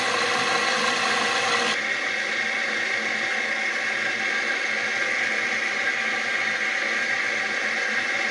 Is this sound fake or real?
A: real